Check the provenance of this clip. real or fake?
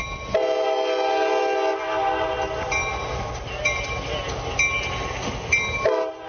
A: real